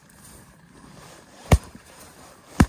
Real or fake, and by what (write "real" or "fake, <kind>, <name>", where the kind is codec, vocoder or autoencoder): fake, vocoder, BigVGAN v2